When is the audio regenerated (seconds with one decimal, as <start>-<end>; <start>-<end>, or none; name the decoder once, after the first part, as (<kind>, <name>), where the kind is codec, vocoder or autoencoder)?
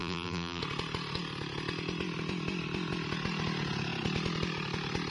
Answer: 0.0-0.6 (vocoder, BigVGAN v2)